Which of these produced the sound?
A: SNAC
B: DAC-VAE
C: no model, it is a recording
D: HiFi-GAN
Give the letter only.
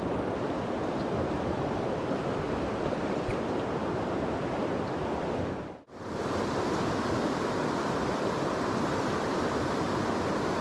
C